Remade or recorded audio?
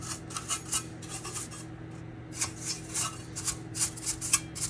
recorded